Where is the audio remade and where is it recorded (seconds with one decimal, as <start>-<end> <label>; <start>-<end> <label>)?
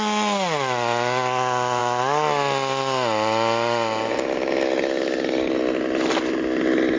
0.0-7.0 recorded